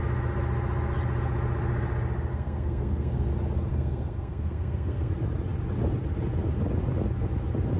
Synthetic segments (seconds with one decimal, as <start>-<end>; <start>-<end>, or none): 2.3-3.3; 3.7-5.1